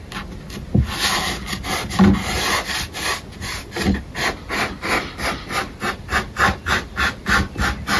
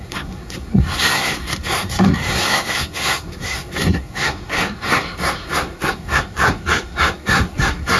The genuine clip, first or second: first